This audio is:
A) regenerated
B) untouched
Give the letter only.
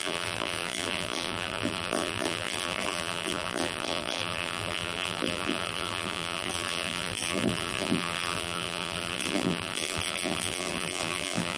A